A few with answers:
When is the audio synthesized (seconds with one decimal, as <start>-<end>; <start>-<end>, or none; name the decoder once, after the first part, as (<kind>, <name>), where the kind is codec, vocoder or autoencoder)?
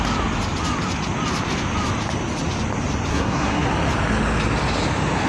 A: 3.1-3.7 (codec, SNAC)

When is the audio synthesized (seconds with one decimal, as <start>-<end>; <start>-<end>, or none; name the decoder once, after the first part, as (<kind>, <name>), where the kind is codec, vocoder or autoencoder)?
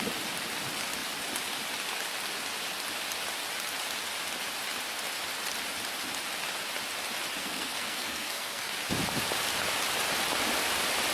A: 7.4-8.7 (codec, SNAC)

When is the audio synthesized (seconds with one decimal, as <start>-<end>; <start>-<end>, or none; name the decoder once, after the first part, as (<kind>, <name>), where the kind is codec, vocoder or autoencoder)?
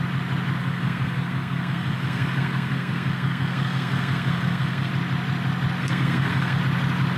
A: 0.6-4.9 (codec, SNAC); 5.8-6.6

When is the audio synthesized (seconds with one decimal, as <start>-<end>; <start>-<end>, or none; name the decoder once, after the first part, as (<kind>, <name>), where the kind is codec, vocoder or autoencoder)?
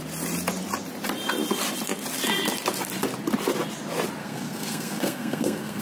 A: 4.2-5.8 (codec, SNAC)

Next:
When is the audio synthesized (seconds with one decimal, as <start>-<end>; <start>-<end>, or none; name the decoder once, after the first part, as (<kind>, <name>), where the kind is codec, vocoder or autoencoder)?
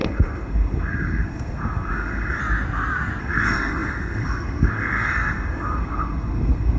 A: 0.0-2.4 (codec, SNAC); 3.2-6.8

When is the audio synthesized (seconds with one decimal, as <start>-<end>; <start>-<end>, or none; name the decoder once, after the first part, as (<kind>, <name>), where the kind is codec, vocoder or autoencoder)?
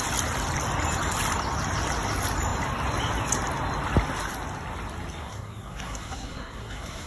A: 5.2-7.1 (codec, SNAC)